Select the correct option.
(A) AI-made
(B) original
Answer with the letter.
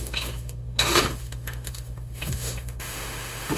A